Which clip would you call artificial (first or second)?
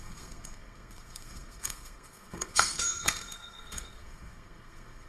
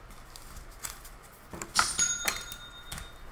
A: first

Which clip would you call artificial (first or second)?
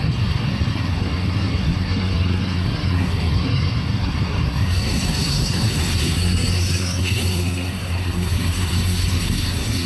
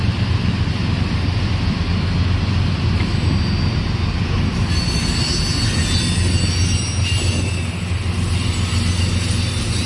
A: first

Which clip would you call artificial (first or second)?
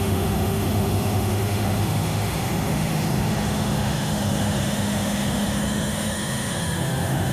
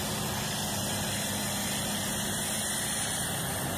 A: first